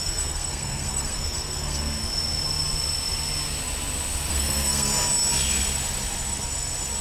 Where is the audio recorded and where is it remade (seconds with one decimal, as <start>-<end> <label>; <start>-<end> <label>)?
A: 0.0-2.0 remade; 2.0-4.3 recorded; 4.3-4.9 remade; 4.9-7.0 recorded